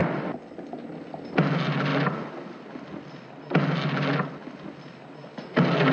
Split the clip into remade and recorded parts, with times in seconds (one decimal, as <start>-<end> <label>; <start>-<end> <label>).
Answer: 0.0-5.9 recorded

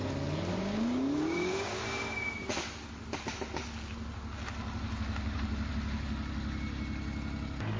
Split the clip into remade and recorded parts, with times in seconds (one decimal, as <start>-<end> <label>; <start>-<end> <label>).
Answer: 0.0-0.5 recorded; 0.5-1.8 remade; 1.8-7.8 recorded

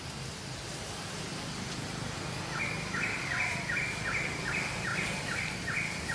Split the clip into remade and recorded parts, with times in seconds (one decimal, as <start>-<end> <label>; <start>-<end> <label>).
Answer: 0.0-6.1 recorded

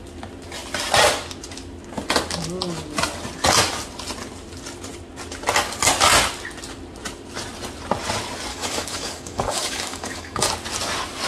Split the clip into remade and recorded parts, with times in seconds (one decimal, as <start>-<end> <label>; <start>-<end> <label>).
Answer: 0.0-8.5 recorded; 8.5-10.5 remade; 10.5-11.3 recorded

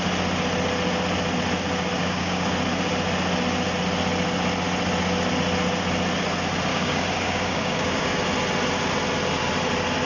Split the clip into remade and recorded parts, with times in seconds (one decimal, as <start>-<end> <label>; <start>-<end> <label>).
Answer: 0.0-2.0 recorded; 2.0-2.5 remade; 2.5-6.7 recorded; 6.7-8.2 remade; 8.2-10.1 recorded